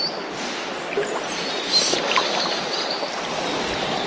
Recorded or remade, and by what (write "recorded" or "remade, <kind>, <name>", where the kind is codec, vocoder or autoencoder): recorded